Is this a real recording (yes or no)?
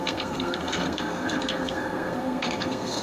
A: no